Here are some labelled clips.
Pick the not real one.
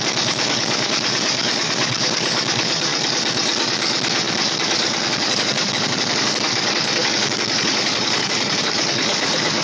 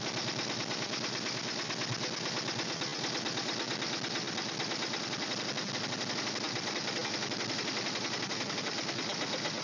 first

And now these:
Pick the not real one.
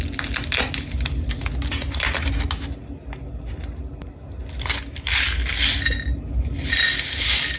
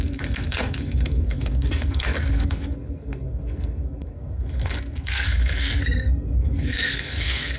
second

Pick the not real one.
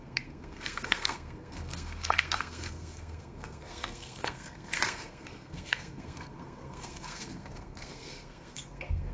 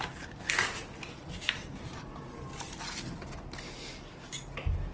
first